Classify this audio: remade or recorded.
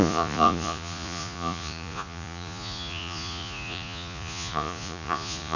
remade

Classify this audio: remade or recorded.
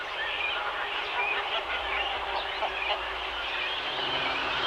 remade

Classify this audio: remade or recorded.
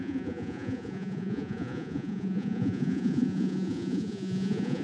remade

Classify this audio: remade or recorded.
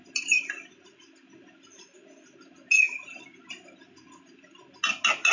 recorded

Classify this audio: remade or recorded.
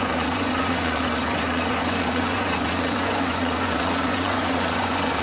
remade